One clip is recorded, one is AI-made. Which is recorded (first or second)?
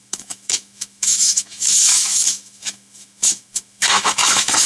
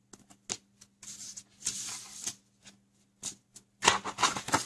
second